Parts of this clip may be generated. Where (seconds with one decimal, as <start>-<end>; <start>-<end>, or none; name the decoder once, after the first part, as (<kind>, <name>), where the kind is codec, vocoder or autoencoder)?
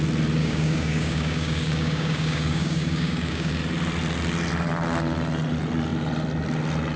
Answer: 0.4-3.5 (codec, DAC)